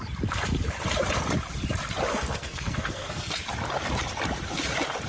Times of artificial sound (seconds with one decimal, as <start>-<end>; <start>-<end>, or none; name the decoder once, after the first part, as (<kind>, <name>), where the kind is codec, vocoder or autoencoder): 2.1-3.4 (codec, SNAC)